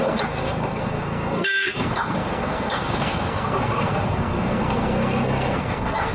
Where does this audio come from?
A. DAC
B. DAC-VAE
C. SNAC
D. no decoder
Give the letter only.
C